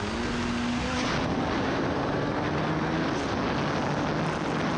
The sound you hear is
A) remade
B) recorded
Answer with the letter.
B